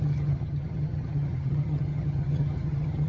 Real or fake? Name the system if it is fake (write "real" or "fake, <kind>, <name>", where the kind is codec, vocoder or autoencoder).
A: fake, vocoder, HiFi-GAN